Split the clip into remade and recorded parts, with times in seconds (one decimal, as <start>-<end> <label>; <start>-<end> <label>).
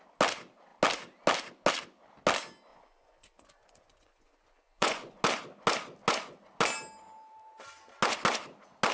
0.0-2.7 recorded; 2.7-5.2 remade; 5.2-8.9 recorded